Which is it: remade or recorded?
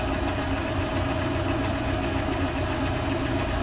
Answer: recorded